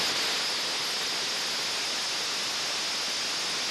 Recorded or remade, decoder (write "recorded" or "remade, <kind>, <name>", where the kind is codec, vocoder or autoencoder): recorded